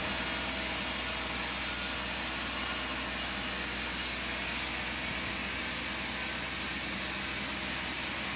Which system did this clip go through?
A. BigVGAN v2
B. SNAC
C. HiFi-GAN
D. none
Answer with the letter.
D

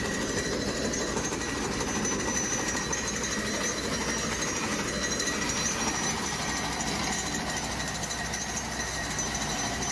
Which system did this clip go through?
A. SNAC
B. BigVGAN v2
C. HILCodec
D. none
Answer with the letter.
D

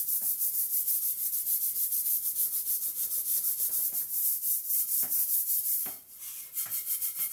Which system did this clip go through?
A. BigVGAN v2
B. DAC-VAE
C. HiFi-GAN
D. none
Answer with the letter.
D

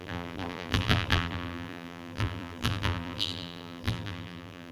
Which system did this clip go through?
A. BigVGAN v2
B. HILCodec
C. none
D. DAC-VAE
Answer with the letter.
A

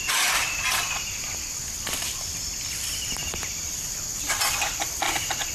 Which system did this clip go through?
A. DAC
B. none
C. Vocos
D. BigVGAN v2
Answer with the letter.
B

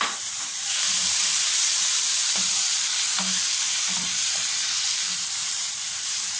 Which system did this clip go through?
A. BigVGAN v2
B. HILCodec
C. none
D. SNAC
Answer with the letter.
A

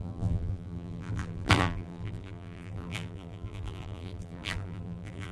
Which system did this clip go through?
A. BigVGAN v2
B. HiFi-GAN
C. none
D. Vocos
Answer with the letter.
A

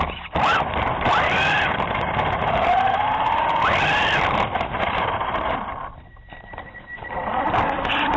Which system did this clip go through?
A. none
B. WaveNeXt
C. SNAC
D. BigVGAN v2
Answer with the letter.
D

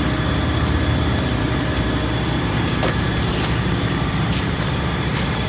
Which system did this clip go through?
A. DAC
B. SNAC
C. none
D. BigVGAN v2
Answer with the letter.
D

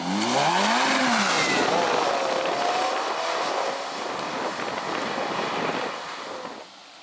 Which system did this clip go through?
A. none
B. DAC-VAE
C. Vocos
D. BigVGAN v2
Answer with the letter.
A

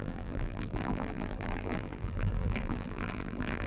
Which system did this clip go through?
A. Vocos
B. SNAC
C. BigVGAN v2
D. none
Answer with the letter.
C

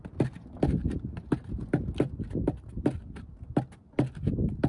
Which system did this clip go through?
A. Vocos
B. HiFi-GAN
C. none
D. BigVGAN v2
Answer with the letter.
C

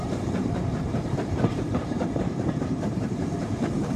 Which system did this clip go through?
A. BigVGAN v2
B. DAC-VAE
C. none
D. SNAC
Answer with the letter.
A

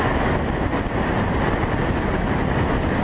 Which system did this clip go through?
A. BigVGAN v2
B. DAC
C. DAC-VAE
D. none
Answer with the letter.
D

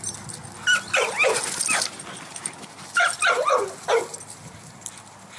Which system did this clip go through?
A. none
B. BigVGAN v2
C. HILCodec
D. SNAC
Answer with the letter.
A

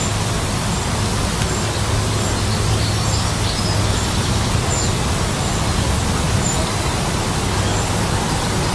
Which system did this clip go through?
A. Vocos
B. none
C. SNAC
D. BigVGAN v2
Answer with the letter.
B